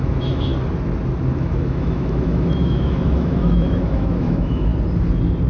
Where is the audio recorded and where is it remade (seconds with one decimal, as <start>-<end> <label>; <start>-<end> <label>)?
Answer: 0.0-0.5 remade; 0.5-1.3 recorded; 1.3-4.7 remade; 4.7-5.5 recorded

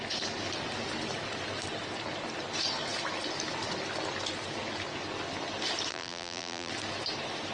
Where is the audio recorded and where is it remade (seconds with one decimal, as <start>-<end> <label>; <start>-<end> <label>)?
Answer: 0.0-5.9 recorded; 5.9-6.7 remade; 6.7-7.5 recorded

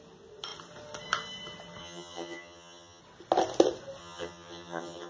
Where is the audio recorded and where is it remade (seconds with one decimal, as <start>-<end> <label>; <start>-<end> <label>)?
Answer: 0.0-1.8 recorded; 1.8-3.0 remade; 3.0-4.0 recorded; 4.0-5.1 remade

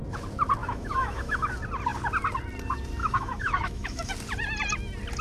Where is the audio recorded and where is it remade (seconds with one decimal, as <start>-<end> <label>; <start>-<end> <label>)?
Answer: 0.0-0.6 recorded; 0.6-1.5 remade; 1.5-3.0 recorded; 3.0-4.1 remade; 4.1-5.2 recorded

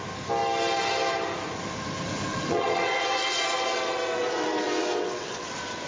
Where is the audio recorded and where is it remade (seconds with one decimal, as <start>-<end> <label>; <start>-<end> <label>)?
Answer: 0.0-2.3 recorded; 2.3-5.5 remade; 5.5-5.9 recorded